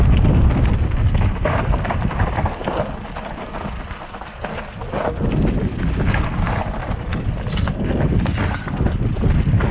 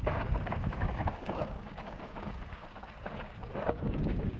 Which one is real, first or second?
first